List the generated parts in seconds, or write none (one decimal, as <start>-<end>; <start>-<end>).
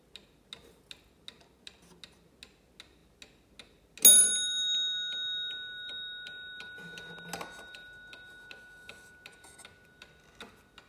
none